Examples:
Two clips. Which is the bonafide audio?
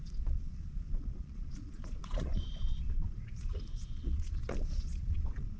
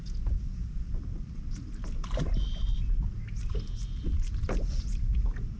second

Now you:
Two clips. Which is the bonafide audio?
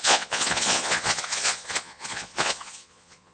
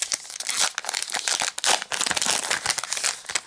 second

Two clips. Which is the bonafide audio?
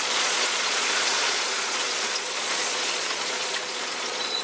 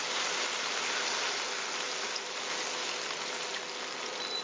second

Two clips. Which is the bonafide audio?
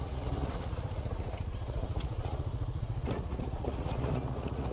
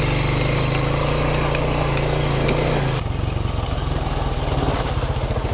second